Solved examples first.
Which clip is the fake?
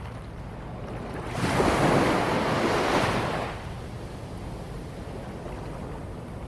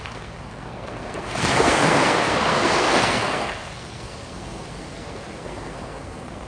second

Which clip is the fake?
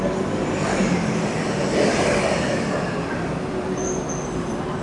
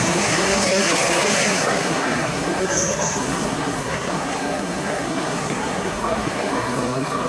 second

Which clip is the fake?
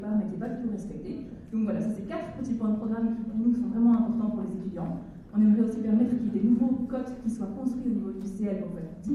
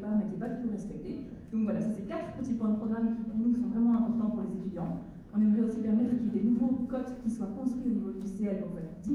second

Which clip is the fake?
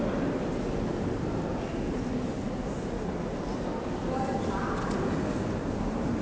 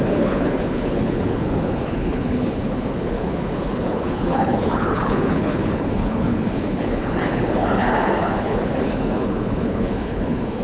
second